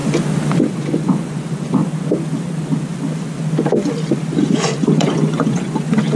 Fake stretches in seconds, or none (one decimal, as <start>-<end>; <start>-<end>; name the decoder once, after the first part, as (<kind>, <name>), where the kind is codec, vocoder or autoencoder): 0.6-1.8 (vocoder, Vocos); 4.4-6.2